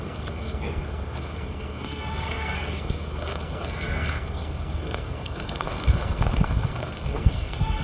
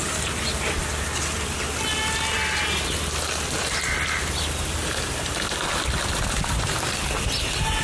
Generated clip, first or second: first